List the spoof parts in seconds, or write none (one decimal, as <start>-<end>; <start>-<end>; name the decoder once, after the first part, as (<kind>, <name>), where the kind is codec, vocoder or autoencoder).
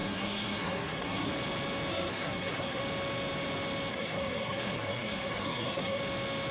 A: 0.0-1.3 (codec, SNAC); 1.9-2.8; 3.9-6.0